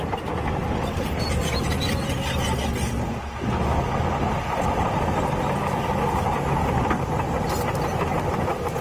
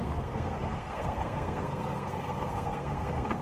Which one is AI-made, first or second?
second